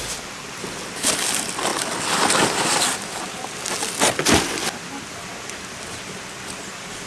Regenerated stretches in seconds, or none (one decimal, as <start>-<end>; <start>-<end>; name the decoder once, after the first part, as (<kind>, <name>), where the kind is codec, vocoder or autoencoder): none